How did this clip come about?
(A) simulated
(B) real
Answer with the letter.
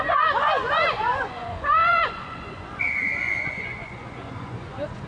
A